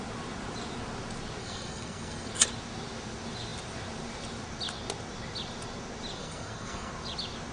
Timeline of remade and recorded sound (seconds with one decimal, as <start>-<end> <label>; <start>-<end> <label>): 0.0-1.4 recorded; 1.4-2.3 remade; 2.3-6.2 recorded; 6.2-6.9 remade; 6.9-7.5 recorded